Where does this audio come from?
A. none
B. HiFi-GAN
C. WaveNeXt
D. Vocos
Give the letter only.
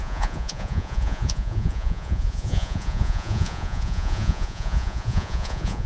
D